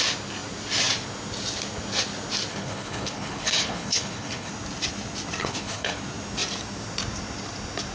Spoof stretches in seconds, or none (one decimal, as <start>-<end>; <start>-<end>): 2.5-4.5; 5.4-6.0